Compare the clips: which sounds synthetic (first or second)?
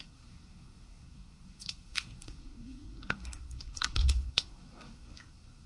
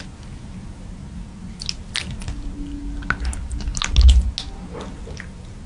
first